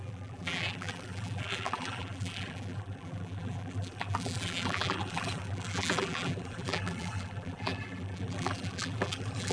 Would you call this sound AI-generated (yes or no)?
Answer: yes